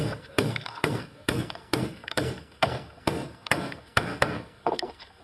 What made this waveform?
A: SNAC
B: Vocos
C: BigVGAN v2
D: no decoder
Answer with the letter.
A